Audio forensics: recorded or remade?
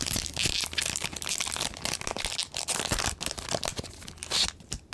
recorded